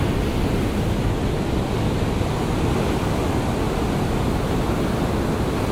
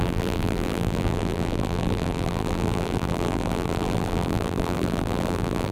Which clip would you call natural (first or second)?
first